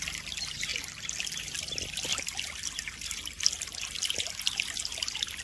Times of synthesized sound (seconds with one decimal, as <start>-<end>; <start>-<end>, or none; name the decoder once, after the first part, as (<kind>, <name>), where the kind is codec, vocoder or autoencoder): none